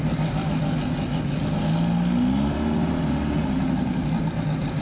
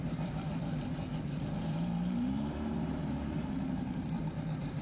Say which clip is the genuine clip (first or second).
first